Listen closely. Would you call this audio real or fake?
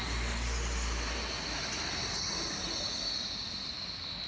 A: real